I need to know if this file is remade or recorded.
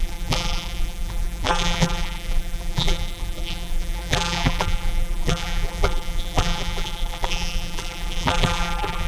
remade